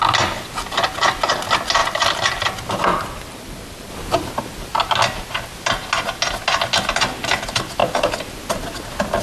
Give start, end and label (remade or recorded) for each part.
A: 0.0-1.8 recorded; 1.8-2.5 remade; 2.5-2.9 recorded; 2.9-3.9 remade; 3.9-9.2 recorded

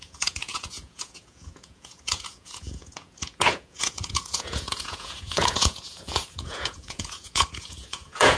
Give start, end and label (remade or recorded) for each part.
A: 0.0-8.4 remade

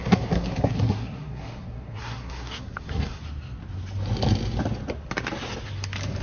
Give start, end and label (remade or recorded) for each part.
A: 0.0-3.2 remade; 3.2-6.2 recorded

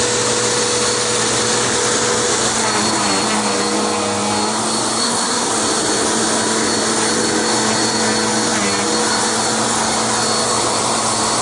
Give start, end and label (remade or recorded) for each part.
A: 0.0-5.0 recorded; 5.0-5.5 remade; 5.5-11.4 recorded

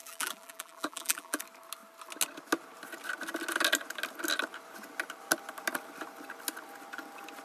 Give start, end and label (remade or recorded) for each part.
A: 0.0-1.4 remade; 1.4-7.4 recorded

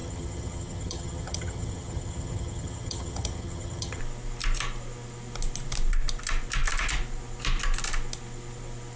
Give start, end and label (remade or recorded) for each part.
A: 0.0-4.0 remade; 4.0-9.0 recorded

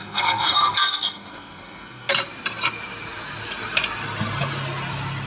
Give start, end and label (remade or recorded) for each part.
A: 0.0-2.1 remade; 2.1-5.3 recorded